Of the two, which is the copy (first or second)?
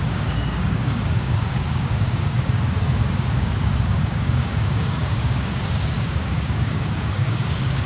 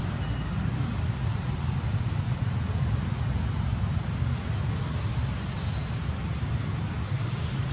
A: first